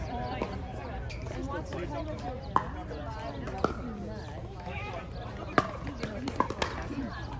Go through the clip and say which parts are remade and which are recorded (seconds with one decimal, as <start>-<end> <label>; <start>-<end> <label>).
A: 0.0-4.4 recorded; 4.4-4.9 remade; 4.9-7.4 recorded